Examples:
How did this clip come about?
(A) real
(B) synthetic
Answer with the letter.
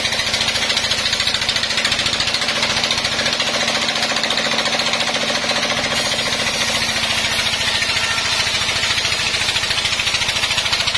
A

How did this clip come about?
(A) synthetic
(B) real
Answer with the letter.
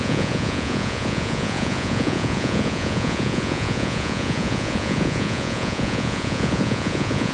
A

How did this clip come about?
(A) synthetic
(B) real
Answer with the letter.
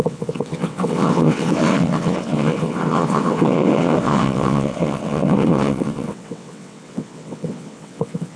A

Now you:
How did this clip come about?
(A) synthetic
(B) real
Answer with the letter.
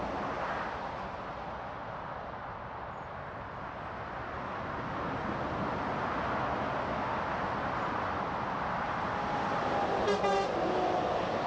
B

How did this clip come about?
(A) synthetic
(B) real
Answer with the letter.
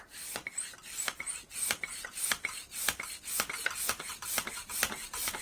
B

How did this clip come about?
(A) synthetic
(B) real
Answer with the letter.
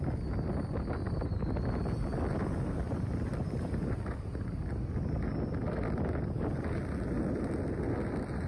B